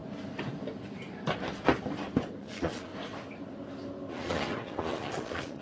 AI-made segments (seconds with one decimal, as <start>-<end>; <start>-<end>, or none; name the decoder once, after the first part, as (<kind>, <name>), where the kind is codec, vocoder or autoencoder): 2.4-2.9 (vocoder, Vocos); 4.1-5.6